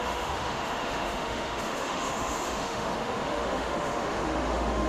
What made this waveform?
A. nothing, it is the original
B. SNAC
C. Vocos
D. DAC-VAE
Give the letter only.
D